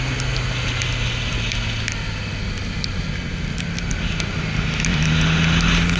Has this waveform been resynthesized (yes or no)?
no